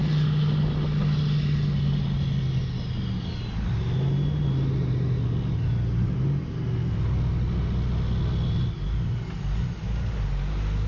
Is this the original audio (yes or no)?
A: yes